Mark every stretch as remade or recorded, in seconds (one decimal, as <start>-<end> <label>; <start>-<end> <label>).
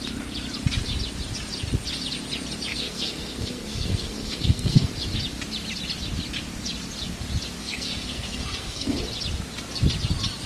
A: 0.0-2.7 recorded; 2.7-4.9 remade; 4.9-7.6 recorded; 7.6-9.0 remade; 9.0-10.5 recorded